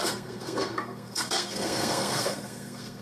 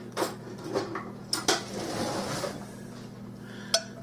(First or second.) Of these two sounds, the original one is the second